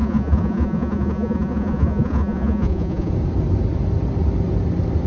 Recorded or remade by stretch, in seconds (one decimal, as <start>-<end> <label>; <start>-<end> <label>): 0.0-3.1 remade; 3.1-5.1 recorded